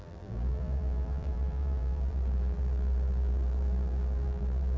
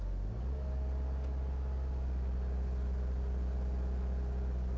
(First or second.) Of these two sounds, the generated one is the first